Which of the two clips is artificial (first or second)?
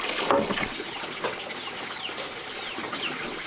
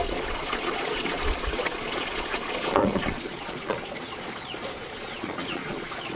second